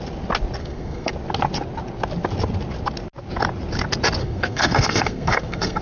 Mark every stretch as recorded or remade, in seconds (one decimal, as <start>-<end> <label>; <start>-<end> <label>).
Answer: 0.0-0.6 recorded; 0.6-1.1 remade; 1.1-4.2 recorded; 4.2-5.8 remade